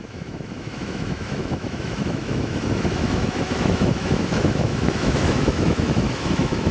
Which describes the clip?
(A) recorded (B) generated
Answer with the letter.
B